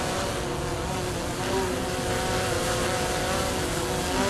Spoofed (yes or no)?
no